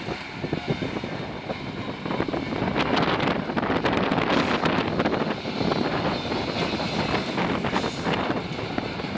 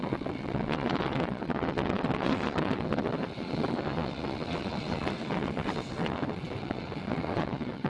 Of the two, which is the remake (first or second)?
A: second